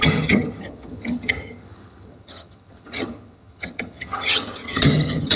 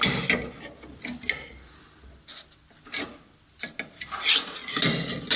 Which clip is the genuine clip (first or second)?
second